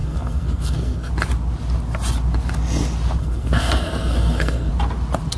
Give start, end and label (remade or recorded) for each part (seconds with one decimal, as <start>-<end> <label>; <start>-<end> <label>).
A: 0.0-1.1 remade; 1.1-3.2 recorded; 3.2-4.7 remade; 4.7-5.4 recorded